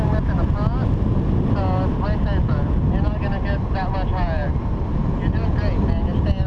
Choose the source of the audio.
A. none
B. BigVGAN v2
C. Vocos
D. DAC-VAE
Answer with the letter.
A